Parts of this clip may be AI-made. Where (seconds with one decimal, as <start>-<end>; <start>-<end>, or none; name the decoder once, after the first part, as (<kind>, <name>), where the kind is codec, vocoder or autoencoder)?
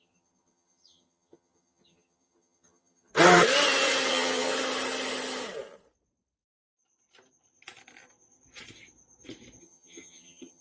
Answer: 0.0-3.1 (vocoder, HiFi-GAN); 4.1-4.5; 9.6-10.6